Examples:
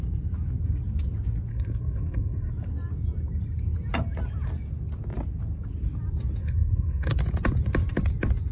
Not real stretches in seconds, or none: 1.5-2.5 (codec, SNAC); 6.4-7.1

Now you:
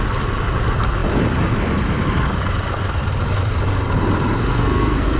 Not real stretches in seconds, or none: 4.5-5.2 (codec, SNAC)

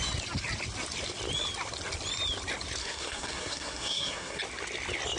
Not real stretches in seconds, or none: 2.8-4.4 (codec, SNAC)

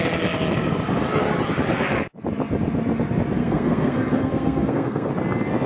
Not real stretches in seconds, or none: 3.4-5.1 (codec, SNAC)

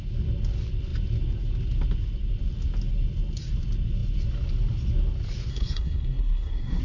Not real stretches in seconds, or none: 5.5-6.8 (codec, SNAC)

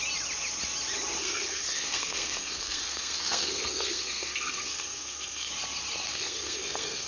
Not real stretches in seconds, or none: 1.2-5.5 (codec, SNAC); 6.1-7.1

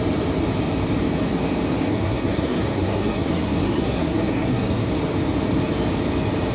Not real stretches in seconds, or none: 1.9-4.9 (codec, SNAC)